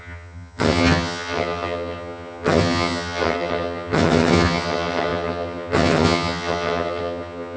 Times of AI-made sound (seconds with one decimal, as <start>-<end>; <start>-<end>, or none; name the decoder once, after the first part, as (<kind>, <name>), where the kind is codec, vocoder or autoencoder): 0.0-7.6 (vocoder, HiFi-GAN)